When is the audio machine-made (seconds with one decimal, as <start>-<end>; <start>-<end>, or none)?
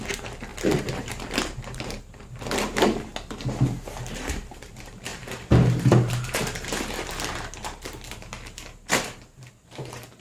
0.0-3.1; 4.1-10.2